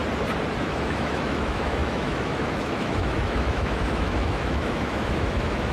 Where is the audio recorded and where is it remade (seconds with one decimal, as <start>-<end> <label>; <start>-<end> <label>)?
0.0-0.6 recorded; 0.6-5.7 remade

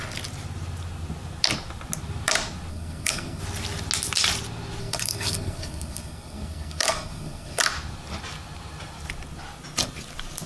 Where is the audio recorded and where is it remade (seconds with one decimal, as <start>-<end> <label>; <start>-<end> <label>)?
0.0-2.7 recorded; 2.7-3.4 remade; 3.4-4.8 recorded; 4.8-7.6 remade; 7.6-10.5 recorded